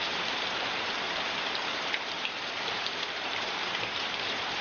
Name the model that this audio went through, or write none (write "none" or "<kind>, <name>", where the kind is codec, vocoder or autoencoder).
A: vocoder, BigVGAN v2